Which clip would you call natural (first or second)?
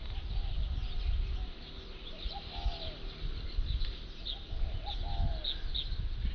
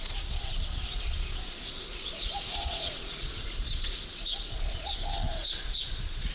first